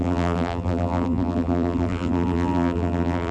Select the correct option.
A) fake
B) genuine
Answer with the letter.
A